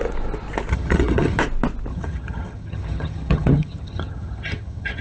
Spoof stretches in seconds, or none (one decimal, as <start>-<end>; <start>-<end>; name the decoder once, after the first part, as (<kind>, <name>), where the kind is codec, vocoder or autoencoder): 0.7-1.4 (vocoder, HiFi-GAN); 1.9-5.0